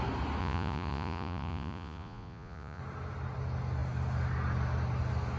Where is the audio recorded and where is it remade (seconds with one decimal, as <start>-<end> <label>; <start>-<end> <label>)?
0.0-0.4 recorded; 0.4-2.8 remade; 2.8-5.4 recorded